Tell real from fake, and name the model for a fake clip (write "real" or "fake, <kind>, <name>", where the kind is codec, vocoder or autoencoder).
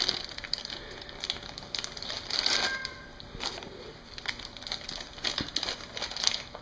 real